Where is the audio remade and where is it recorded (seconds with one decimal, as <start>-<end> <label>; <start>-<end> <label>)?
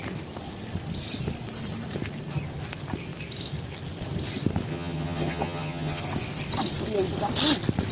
0.0-4.7 recorded; 4.7-6.0 remade; 6.0-7.9 recorded